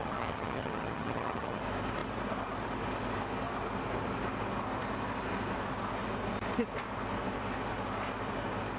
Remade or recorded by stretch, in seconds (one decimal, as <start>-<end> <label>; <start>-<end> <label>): 0.0-1.6 remade; 1.6-8.8 recorded